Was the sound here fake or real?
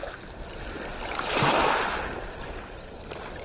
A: real